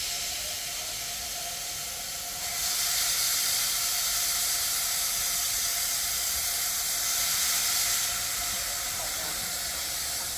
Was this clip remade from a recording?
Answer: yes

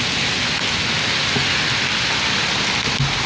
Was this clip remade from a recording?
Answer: no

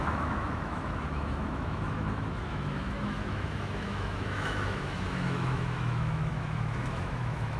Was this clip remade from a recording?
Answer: yes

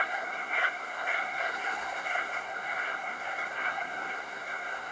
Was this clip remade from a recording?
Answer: yes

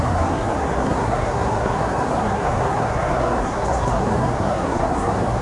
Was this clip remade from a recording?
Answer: yes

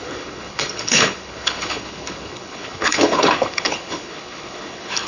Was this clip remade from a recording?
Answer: yes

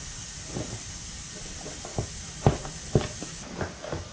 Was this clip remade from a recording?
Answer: no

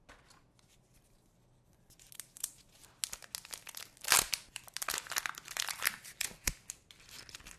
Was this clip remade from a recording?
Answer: no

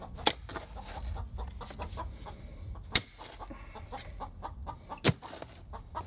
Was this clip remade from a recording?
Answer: no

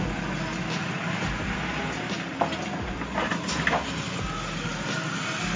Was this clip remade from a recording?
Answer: no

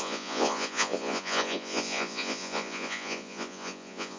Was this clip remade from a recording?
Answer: yes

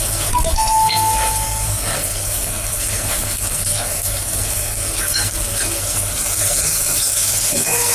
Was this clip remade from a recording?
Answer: yes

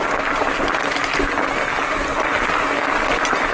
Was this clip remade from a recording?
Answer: no